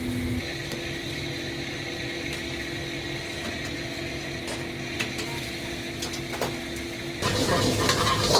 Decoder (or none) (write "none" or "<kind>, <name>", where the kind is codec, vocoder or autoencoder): none